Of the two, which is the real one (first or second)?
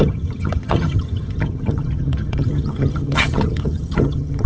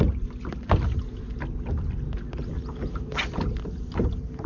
second